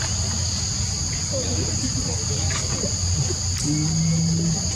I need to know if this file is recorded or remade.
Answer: recorded